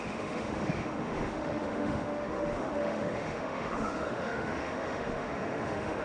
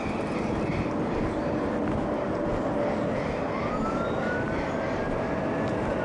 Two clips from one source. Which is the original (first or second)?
second